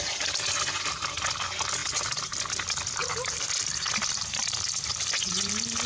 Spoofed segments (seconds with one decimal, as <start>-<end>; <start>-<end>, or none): none